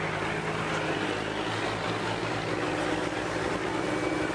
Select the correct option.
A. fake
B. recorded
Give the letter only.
B